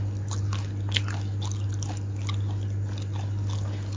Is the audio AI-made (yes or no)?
no